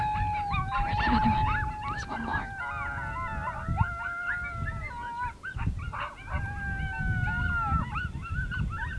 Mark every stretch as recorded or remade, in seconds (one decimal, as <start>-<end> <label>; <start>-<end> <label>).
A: 0.0-9.0 recorded